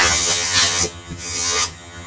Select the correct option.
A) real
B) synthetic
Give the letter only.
B